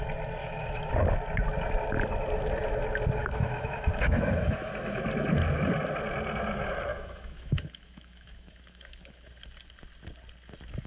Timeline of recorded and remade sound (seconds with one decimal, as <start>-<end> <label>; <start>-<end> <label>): 0.0-0.4 recorded; 0.4-0.9 remade; 0.9-3.2 recorded; 3.2-4.7 remade; 4.7-6.9 recorded; 6.9-9.3 remade; 9.3-10.9 recorded

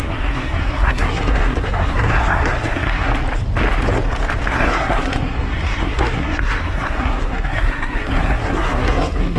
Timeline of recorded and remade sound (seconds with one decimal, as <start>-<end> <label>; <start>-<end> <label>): 0.0-3.1 remade; 3.1-4.5 recorded; 4.5-9.4 remade